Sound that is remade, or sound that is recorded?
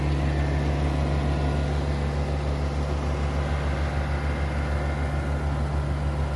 recorded